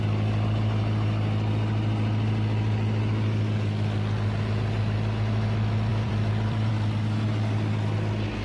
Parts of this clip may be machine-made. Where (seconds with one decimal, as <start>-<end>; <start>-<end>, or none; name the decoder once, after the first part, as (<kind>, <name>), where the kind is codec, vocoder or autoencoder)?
5.9-6.7 (vocoder, BigVGAN v2)